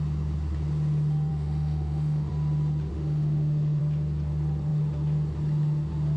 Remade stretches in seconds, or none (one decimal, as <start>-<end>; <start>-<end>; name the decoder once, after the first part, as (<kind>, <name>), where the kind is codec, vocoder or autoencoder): 1.3-2.3 (autoencoder, DAC-VAE); 2.9-3.8